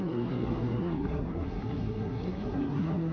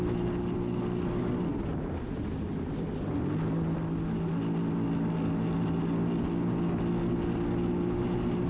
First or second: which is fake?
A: first